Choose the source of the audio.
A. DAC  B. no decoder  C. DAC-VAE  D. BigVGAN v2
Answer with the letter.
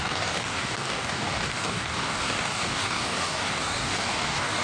A